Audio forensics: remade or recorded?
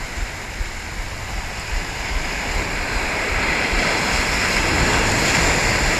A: recorded